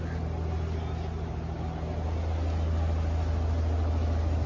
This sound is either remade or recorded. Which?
recorded